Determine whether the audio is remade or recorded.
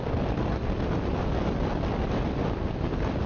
recorded